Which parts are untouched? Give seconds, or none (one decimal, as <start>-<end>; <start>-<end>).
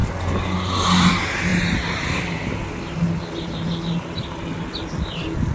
0.0-5.5